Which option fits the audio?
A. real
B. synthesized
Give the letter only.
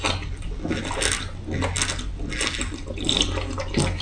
A